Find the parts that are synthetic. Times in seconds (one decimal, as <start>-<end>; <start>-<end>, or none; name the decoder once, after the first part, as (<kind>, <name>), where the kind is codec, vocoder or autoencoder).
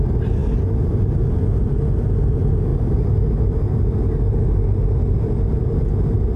none